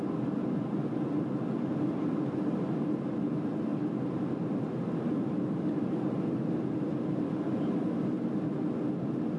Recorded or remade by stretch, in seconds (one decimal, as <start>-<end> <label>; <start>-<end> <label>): 0.0-9.4 recorded